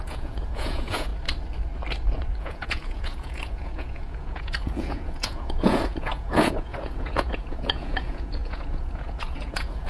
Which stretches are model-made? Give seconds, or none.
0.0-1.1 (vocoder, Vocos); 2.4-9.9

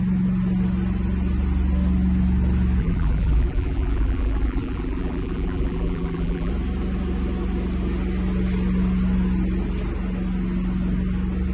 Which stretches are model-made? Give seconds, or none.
2.8-6.5 (vocoder, BigVGAN v2)

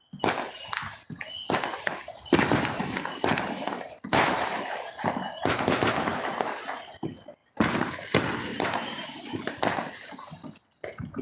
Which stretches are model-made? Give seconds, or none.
1.7-6.2 (vocoder, BigVGAN v2); 7.4-7.9; 8.5-9.5